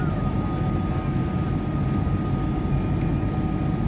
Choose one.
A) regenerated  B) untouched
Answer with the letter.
B